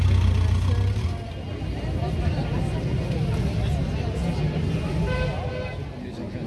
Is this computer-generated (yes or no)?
no